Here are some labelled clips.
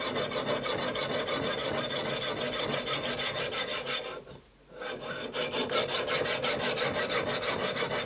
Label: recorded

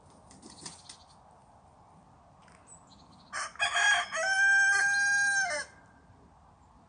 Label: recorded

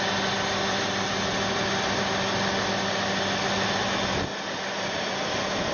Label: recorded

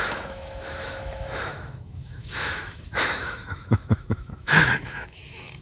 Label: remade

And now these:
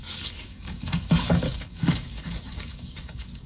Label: remade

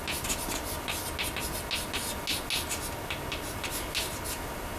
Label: recorded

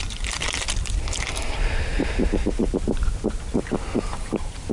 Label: recorded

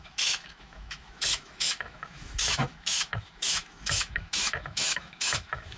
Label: remade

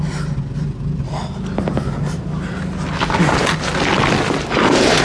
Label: recorded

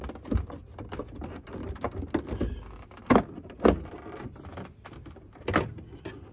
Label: recorded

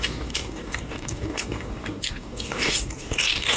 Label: remade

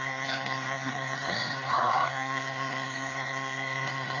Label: remade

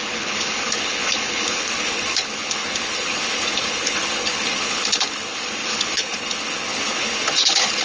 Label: remade